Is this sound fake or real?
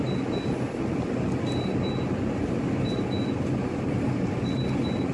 real